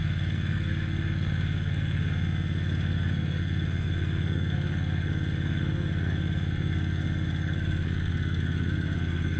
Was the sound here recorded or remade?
remade